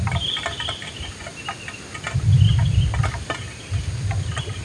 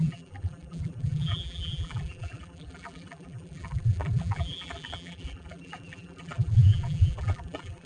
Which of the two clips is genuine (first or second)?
first